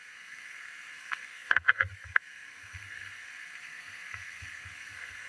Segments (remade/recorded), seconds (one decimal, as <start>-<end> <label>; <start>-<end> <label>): 0.0-5.3 remade